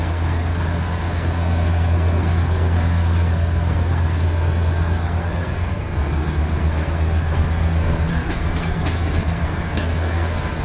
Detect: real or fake fake